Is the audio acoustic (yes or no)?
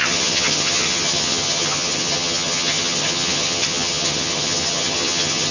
no